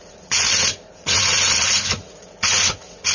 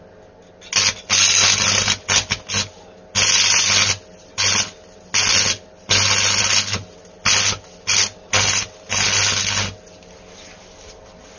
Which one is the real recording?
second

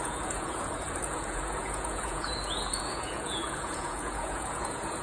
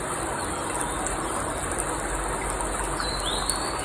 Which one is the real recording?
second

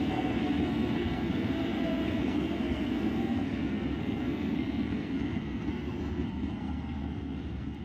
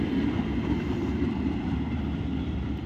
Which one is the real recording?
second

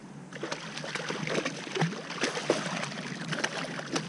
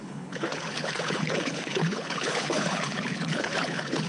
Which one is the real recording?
first